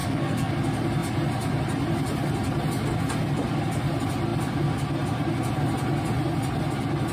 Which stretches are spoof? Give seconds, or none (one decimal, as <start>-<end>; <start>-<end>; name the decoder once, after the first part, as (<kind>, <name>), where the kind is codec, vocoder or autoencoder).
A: 0.0-0.5 (codec, SNAC)